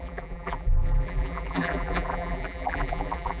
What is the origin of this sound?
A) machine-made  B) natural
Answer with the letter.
A